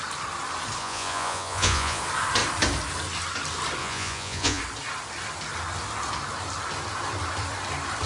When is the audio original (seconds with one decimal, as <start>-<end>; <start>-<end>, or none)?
0.0-0.8; 2.0-3.8; 4.6-8.1